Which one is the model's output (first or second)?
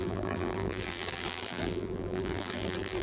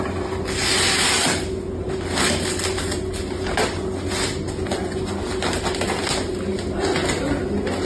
first